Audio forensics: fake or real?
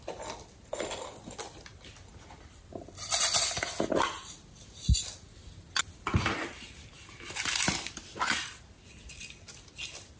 real